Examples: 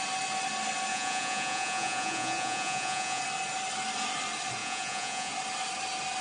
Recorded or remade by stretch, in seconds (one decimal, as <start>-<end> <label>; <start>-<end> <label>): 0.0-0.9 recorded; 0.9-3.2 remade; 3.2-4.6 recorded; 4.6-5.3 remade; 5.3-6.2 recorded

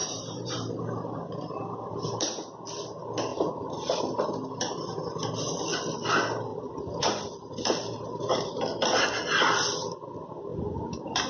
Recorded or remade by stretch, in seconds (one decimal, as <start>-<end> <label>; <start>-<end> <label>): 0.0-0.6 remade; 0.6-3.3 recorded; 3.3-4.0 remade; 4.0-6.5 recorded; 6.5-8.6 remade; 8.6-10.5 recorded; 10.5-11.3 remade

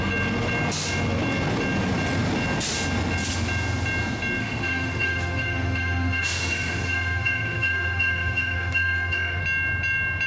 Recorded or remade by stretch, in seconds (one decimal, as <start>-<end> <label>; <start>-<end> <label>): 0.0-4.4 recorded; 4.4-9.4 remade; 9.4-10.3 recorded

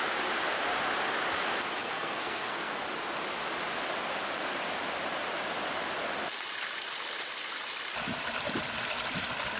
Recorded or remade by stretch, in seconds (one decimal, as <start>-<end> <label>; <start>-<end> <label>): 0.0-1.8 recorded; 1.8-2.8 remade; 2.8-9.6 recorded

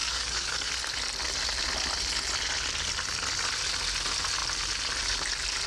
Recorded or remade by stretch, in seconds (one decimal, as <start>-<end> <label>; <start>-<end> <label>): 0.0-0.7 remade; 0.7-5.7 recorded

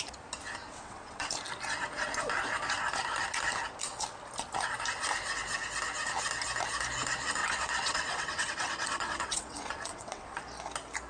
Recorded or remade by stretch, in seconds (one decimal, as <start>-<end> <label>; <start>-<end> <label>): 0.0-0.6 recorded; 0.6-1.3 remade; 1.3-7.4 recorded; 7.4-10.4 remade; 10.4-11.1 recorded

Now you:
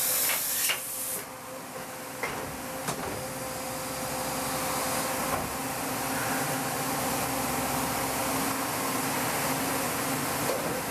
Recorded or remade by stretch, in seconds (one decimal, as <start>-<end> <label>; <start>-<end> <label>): 0.0-10.9 recorded